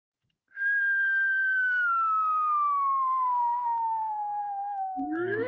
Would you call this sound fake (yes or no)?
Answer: yes